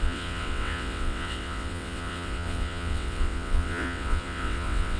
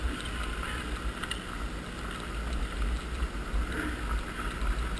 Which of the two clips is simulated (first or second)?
first